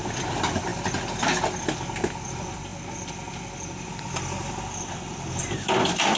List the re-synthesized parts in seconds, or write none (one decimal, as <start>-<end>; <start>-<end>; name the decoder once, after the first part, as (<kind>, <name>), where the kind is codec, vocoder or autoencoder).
0.0-0.7 (vocoder, BigVGAN v2); 2.3-6.2